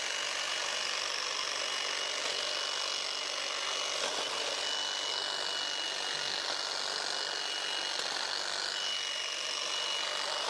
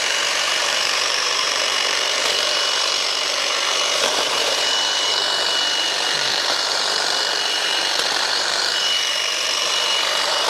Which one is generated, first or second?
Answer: second